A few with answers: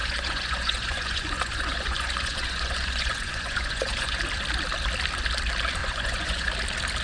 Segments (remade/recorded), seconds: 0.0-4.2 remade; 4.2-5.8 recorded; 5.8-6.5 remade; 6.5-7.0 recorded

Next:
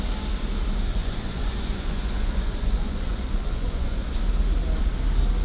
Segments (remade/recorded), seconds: 0.0-1.0 recorded; 1.0-4.2 remade; 4.2-5.4 recorded

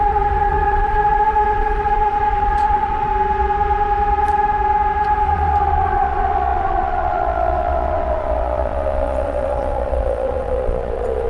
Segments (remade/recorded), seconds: 0.0-3.1 remade; 3.1-5.3 recorded; 5.3-11.3 remade

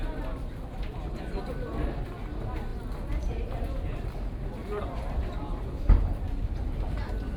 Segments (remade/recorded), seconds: 0.0-7.4 recorded

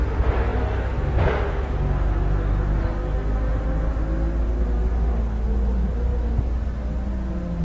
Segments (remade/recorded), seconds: 0.0-7.6 recorded

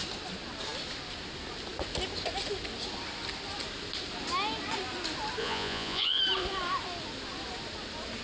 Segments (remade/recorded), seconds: 0.0-5.4 recorded; 5.4-6.2 remade; 6.2-8.2 recorded